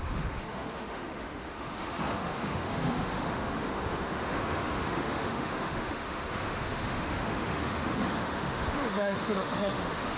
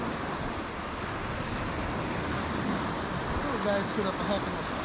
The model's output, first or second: first